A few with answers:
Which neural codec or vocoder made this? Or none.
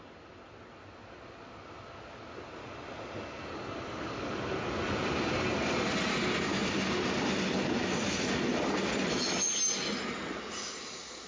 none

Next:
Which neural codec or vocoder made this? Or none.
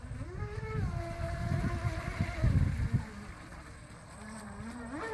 none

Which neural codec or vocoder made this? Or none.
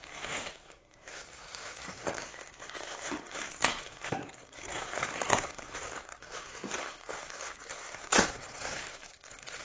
codec, SNAC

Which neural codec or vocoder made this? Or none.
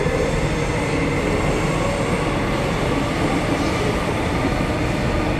none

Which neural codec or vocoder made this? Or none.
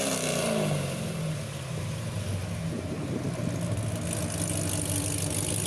none